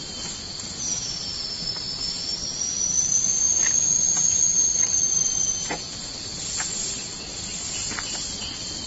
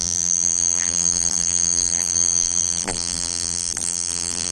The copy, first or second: second